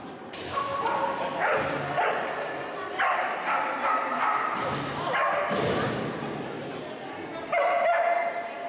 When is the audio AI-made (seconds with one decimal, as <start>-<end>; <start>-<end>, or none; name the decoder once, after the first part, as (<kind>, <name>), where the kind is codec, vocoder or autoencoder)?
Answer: none

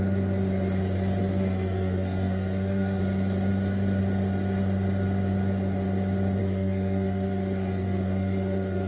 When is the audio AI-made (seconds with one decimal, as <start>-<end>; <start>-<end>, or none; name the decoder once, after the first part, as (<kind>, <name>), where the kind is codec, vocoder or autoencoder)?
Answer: 1.2-3.0 (codec, SNAC); 6.4-8.9

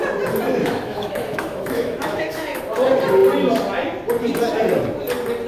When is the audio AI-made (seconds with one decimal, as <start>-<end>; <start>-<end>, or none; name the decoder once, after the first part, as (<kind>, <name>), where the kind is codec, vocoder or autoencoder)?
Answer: 0.6-2.6 (autoencoder, DAC-VAE)

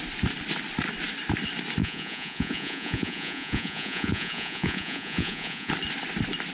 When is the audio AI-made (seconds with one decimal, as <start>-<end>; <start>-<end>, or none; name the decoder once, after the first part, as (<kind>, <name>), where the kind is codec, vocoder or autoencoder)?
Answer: 1.8-5.7 (vocoder, Vocos)